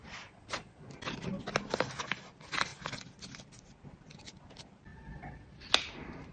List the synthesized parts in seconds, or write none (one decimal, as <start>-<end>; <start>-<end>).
0.0-0.9; 4.9-5.7

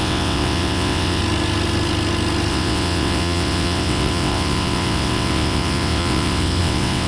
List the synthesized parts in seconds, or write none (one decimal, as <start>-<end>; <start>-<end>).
0.0-1.2; 2.5-7.1

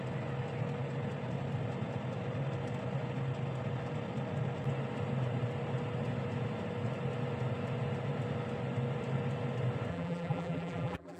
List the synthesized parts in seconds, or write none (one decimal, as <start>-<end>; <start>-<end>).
9.9-11.2

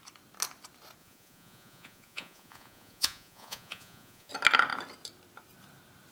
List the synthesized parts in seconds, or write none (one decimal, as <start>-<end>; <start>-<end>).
1.0-4.3

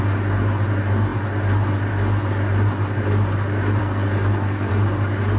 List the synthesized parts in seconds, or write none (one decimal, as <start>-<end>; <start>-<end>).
3.8-4.7

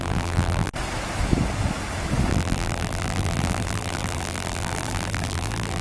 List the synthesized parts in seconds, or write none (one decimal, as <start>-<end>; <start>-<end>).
0.0-0.7; 2.3-5.8

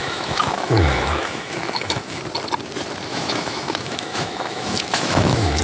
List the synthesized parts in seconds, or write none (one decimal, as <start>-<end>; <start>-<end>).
0.0-2.2; 3.1-5.6

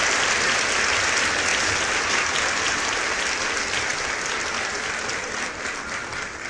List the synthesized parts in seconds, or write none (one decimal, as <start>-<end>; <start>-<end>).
1.5-2.1